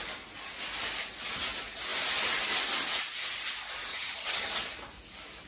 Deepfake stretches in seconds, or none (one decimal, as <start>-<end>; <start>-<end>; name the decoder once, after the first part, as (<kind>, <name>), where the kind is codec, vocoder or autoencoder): 3.9-4.5 (vocoder, HiFi-GAN)